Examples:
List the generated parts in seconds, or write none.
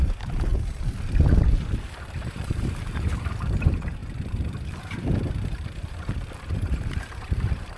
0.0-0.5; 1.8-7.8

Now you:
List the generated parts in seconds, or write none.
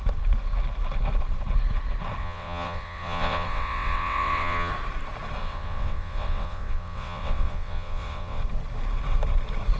2.2-4.7; 5.4-8.4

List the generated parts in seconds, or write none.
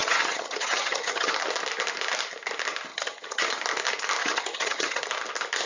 0.0-1.3; 2.9-3.5; 4.2-5.0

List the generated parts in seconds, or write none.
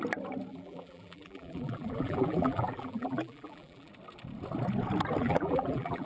0.5-3.9; 5.2-6.1